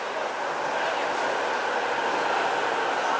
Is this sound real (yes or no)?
yes